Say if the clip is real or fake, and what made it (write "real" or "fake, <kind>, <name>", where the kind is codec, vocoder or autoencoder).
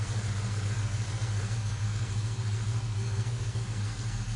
fake, codec, SNAC